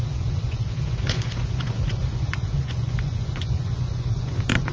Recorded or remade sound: remade